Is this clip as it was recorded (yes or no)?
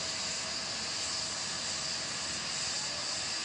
yes